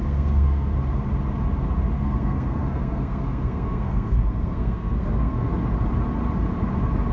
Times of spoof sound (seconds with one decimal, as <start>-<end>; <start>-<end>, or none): 0.0-0.7; 2.0-5.5